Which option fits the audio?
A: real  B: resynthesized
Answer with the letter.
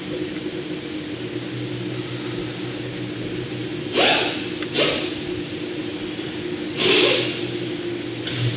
A